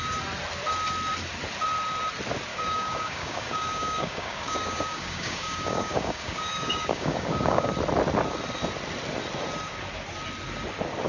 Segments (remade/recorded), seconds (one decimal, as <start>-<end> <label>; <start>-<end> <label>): 0.0-2.5 recorded; 2.5-7.7 remade; 7.7-11.1 recorded